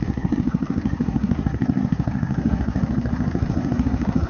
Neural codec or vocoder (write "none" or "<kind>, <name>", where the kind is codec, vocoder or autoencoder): codec, SNAC